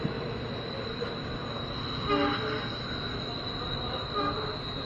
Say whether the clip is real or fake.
real